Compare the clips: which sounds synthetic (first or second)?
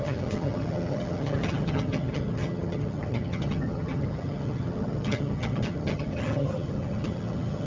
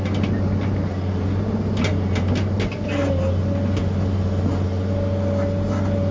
first